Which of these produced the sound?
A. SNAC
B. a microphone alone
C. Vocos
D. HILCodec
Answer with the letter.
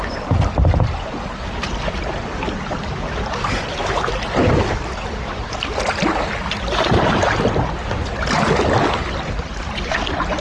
B